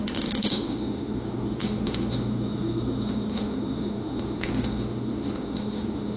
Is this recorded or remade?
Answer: remade